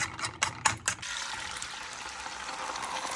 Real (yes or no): yes